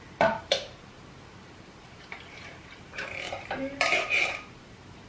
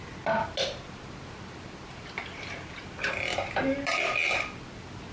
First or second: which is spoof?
first